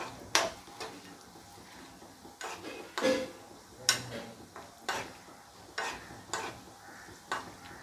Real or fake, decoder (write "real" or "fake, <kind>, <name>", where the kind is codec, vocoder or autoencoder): real